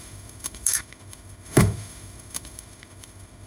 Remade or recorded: remade